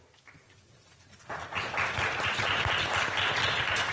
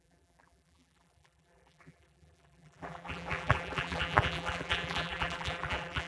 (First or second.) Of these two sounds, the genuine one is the first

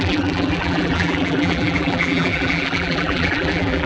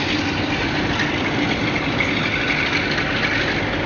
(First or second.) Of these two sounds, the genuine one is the second